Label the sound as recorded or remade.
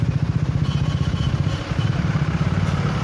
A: remade